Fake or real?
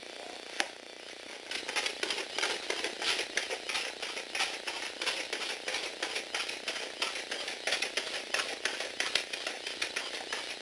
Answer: real